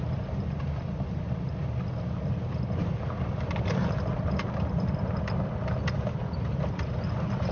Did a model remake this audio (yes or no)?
no